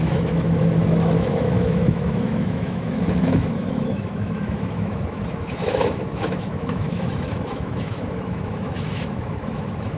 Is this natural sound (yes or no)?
no